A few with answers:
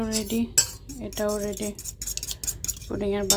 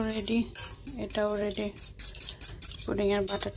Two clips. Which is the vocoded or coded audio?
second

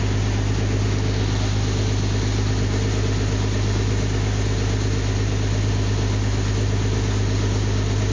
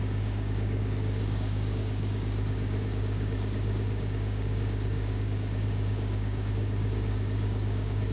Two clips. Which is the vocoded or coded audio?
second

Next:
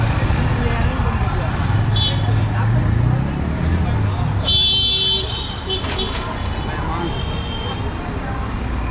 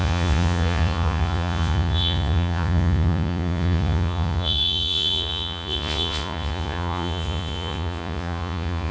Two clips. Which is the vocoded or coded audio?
second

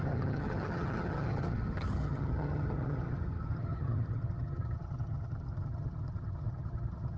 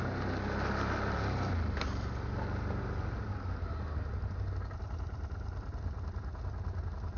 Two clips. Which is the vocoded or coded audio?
first